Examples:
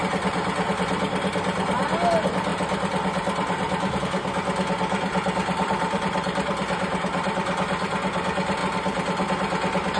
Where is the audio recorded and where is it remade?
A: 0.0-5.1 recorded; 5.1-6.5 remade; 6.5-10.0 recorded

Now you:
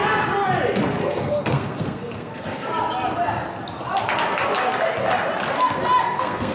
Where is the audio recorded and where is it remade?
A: 0.0-1.0 recorded; 1.0-2.7 remade; 2.7-6.0 recorded; 6.0-6.5 remade